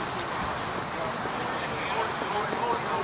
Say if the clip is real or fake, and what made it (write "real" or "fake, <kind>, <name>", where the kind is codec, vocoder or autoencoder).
real